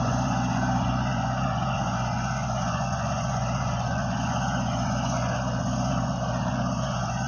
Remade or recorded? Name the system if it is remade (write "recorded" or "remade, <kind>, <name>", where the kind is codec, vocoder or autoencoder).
remade, vocoder, Vocos